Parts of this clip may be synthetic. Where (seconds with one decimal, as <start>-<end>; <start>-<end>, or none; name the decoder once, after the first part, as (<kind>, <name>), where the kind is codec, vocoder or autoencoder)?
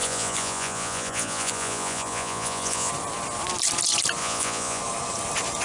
0.0-2.9 (vocoder, Vocos); 4.2-4.8